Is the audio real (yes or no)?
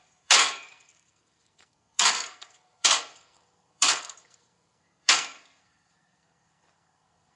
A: no